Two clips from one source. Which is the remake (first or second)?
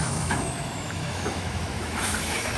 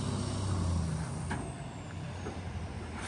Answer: first